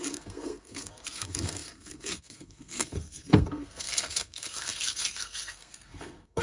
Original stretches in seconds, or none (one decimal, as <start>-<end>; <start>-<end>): none

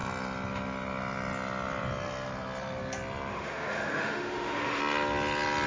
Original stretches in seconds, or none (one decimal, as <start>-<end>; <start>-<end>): 0.0-3.3; 4.8-5.7

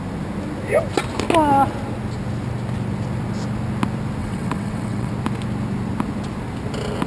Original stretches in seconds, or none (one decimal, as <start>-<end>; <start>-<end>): 0.0-4.2; 5.1-7.1

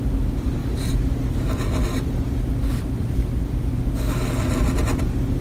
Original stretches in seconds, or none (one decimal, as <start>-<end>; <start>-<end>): 0.0-2.7; 3.4-5.4

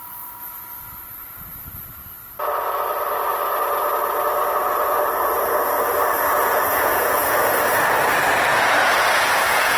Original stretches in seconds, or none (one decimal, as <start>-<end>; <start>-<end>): 0.0-6.4; 7.7-8.5

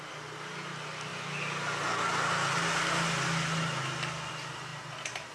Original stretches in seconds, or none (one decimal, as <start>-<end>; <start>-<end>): 0.0-4.7